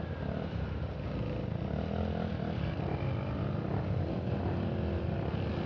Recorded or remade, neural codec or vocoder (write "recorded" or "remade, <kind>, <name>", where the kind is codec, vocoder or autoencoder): recorded